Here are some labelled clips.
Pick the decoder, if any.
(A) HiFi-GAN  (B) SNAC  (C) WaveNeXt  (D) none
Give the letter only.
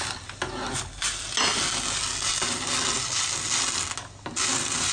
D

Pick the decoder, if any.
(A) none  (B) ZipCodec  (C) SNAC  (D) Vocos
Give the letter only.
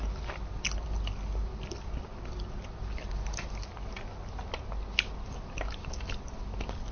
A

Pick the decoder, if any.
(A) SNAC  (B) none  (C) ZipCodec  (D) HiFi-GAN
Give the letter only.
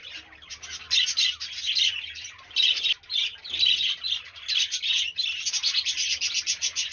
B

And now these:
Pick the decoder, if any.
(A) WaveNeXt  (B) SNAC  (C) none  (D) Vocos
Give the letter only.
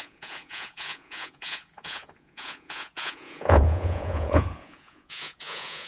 D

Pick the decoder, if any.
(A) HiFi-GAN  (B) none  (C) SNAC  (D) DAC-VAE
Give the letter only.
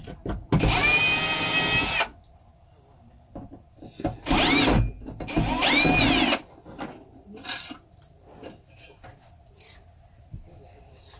B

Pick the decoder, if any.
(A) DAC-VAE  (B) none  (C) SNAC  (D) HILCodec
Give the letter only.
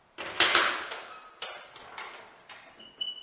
B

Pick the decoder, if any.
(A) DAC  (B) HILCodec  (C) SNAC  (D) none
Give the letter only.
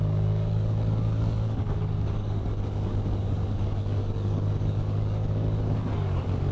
A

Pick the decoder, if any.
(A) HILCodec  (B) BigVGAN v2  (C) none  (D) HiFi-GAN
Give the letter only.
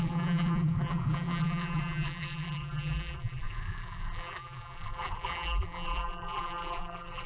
B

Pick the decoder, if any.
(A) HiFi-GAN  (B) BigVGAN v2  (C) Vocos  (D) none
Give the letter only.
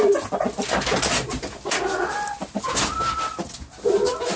D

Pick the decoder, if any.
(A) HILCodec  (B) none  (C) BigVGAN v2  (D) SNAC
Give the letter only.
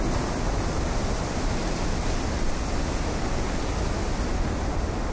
B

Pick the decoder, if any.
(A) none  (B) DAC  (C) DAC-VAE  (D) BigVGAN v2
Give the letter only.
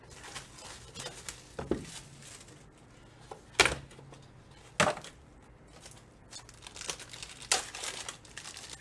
A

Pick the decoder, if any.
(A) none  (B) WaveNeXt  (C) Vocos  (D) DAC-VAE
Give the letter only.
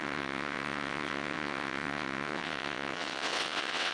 B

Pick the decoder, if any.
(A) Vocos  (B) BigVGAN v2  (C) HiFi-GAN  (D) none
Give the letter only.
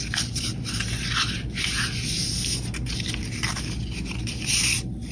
D